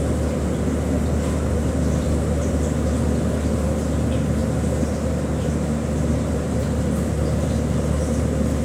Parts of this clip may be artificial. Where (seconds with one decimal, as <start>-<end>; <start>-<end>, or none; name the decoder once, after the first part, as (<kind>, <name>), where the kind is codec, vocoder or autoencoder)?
none